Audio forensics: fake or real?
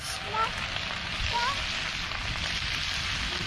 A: real